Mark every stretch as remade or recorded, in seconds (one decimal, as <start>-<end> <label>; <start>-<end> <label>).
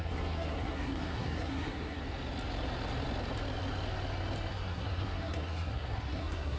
0.0-2.0 remade; 2.0-4.5 recorded; 4.5-6.6 remade